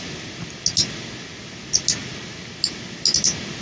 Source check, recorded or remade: recorded